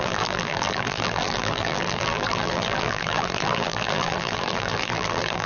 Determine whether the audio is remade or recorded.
remade